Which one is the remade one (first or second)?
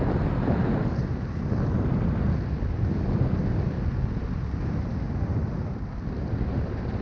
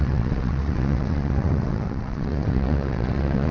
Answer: second